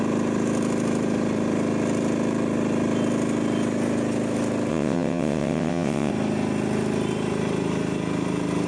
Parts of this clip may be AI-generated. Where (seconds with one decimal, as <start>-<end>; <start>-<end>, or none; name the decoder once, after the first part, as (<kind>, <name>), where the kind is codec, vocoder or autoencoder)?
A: 4.7-6.1 (vocoder, WaveNeXt)